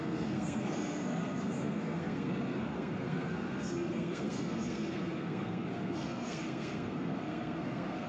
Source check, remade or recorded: remade